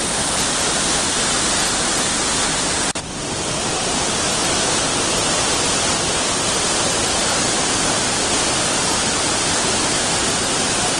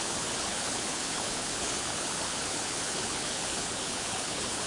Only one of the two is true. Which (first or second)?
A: first